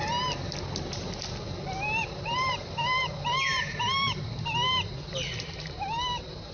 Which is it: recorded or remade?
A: recorded